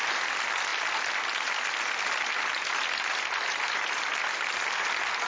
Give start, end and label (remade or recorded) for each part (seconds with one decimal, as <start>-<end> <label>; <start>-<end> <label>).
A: 0.0-5.3 recorded